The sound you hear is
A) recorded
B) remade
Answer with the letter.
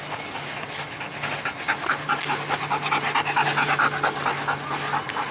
A